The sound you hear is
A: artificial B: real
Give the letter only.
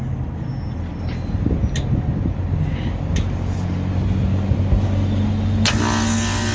B